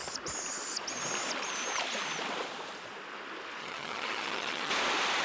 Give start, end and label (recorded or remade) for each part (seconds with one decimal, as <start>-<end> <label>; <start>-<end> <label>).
0.0-3.6 recorded; 3.6-4.7 remade; 4.7-5.2 recorded